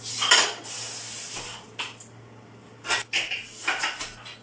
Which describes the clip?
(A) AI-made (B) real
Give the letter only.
B